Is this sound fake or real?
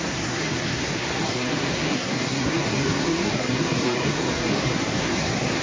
fake